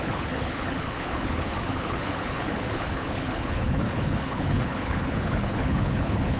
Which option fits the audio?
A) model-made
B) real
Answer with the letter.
A